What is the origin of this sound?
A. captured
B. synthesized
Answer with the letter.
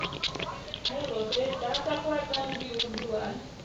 A